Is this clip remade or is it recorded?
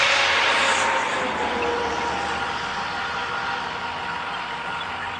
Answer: recorded